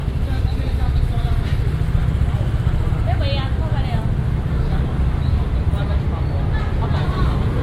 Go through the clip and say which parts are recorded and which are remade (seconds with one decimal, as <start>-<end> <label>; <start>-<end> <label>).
0.0-7.6 recorded

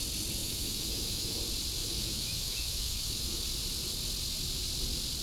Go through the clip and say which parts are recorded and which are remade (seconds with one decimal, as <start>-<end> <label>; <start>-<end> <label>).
0.0-0.4 recorded; 0.4-1.4 remade; 1.4-1.8 recorded; 1.8-3.4 remade; 3.4-5.2 recorded